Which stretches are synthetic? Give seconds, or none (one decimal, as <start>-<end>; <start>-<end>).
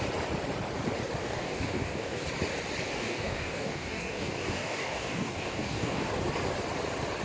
1.2-2.2; 2.9-6.1